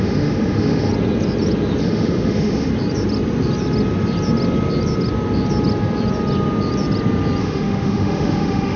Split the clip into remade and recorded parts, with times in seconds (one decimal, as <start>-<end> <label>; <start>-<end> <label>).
0.0-0.9 remade; 0.9-1.8 recorded; 1.8-2.7 remade; 2.7-7.4 recorded; 7.4-8.8 remade